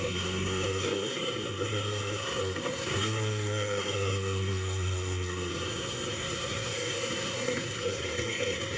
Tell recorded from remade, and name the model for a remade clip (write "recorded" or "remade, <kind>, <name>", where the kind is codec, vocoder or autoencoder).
remade, codec, SNAC